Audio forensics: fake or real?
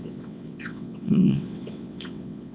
fake